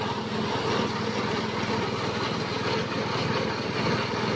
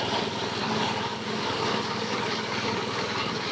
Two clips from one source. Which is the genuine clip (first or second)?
first